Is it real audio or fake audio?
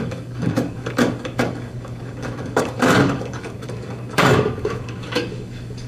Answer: fake